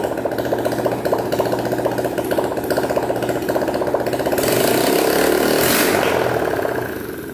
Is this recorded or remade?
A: recorded